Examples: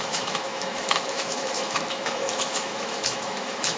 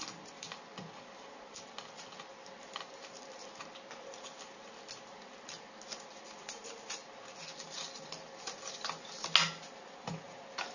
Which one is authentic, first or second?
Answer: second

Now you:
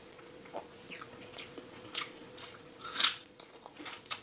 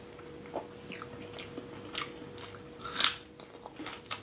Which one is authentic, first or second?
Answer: second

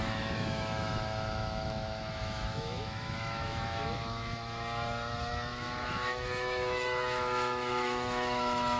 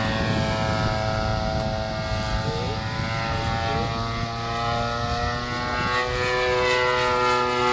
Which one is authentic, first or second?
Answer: second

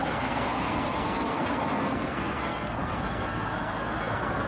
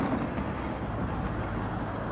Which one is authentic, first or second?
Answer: second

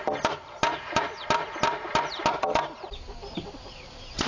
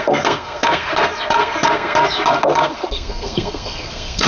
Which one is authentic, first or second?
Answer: first